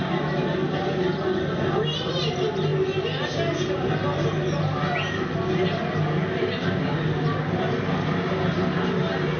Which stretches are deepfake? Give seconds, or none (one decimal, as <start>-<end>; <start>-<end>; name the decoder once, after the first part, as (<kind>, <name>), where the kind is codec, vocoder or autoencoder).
none